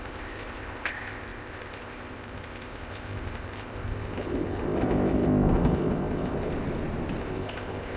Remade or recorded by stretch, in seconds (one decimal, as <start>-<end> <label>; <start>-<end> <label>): 0.0-6.5 remade; 6.5-7.2 recorded; 7.2-8.0 remade